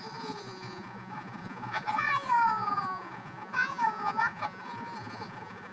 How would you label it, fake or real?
fake